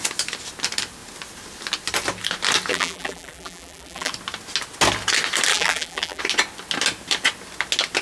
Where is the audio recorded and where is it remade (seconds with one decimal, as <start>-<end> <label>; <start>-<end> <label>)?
0.0-2.7 recorded; 2.7-4.1 remade; 4.1-5.5 recorded; 5.5-6.2 remade; 6.2-8.0 recorded